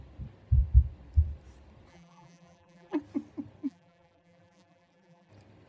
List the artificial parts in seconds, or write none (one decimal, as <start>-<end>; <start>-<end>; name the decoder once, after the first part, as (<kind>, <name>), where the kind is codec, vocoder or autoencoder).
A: 1.9-3.0 (vocoder, BigVGAN v2); 3.6-5.3